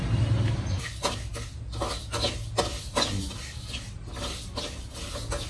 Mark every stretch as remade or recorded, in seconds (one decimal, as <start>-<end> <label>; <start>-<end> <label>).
0.0-5.5 recorded